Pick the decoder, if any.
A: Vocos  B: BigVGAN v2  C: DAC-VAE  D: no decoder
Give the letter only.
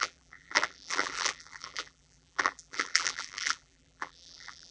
B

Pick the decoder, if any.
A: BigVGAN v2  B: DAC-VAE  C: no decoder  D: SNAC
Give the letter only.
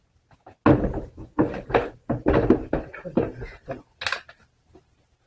C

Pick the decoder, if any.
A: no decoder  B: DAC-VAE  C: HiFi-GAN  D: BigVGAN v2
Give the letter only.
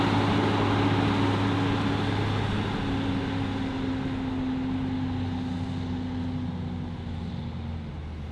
A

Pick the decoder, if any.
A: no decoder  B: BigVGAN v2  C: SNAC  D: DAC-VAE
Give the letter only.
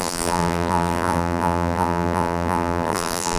B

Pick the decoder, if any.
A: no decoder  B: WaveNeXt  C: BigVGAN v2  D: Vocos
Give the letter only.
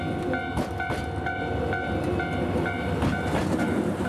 A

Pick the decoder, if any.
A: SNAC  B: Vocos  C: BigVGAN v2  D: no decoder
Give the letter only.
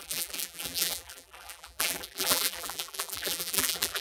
C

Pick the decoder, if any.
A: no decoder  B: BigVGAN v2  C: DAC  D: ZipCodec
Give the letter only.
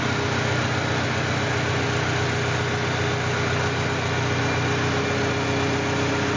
A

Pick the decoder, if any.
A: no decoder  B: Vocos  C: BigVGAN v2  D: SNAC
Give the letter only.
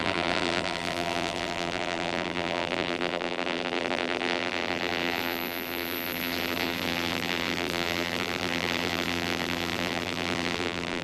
C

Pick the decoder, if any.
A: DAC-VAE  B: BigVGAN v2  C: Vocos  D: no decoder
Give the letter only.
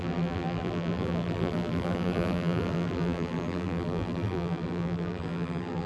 B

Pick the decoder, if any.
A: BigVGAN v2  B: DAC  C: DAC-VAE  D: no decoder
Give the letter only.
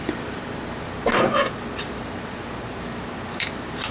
D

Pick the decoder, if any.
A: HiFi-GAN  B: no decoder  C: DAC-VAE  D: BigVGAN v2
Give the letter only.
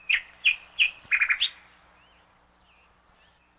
B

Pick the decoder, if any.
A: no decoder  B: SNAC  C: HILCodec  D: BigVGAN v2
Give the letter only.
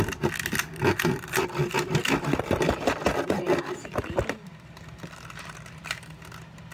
A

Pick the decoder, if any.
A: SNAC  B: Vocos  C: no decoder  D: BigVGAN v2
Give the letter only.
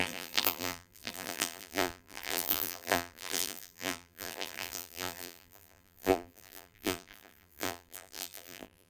D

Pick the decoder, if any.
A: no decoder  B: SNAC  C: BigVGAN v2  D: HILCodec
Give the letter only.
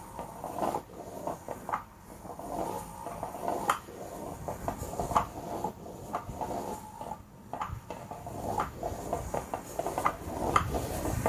A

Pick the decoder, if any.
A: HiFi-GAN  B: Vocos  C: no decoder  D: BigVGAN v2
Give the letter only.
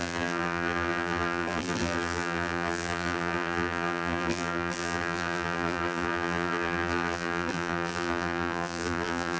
D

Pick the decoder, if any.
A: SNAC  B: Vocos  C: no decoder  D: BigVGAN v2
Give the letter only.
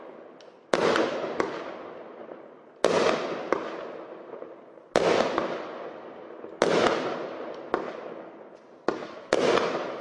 C